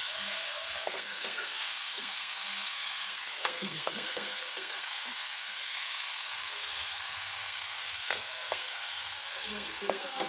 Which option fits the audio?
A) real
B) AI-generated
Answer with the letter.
B